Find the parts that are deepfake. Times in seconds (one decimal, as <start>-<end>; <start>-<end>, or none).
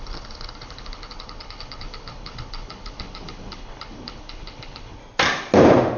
0.0-5.0